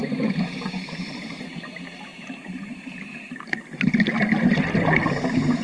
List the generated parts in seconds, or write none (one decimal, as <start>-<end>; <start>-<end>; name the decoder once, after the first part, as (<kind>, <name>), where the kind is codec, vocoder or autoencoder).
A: 0.0-1.4 (vocoder, BigVGAN v2); 2.1-2.9